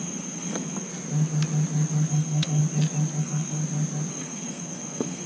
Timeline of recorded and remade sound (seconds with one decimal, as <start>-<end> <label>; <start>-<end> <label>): 0.0-0.9 remade; 0.9-2.1 recorded; 2.1-2.6 remade; 2.6-3.2 recorded; 3.2-3.6 remade; 3.6-4.1 recorded; 4.1-5.3 remade